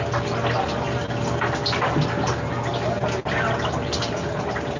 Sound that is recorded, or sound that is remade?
recorded